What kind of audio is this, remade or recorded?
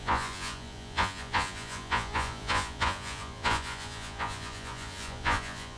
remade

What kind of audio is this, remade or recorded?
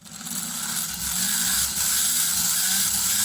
recorded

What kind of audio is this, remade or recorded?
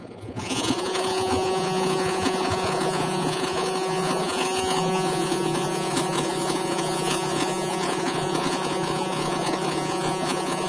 remade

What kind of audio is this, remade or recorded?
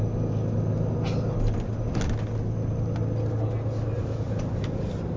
recorded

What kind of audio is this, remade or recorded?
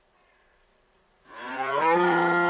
remade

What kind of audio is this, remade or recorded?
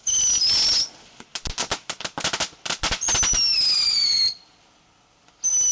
recorded